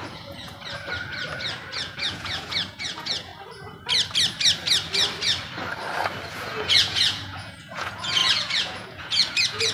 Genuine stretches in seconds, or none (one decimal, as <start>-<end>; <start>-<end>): 0.6-1.8; 3.3-6.3